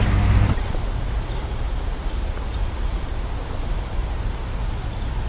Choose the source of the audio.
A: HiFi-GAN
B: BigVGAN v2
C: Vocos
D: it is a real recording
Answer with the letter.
B